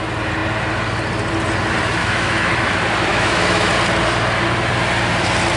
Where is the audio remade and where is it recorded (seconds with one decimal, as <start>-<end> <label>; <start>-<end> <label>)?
0.0-2.0 recorded; 2.0-2.5 remade; 2.5-3.1 recorded; 3.1-3.7 remade; 3.7-5.6 recorded